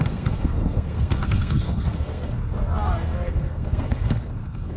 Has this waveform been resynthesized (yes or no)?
yes